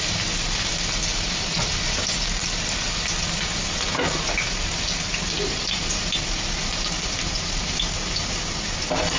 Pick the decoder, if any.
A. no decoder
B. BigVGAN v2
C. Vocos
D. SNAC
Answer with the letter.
A